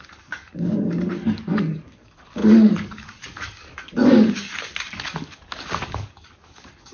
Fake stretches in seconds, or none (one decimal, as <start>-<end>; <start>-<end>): 0.0-6.9